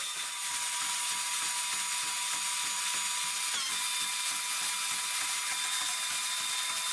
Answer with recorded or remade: recorded